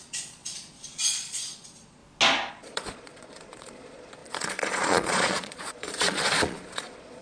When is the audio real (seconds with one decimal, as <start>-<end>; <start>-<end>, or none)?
2.0-2.5